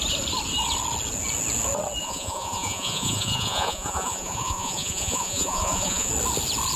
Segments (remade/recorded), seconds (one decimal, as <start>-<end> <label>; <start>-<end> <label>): 0.0-2.0 recorded; 2.0-6.1 remade; 6.1-6.8 recorded